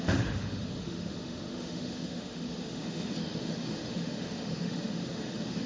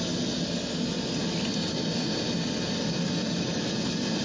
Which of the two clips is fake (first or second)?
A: first